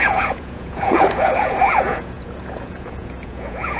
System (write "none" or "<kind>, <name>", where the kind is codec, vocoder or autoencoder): vocoder, Vocos